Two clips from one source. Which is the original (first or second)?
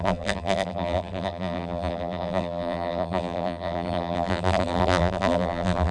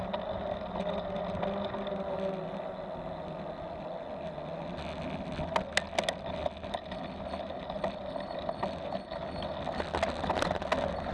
second